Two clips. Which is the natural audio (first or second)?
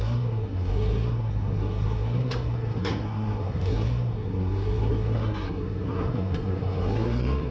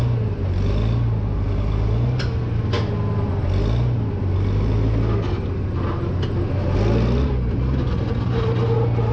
second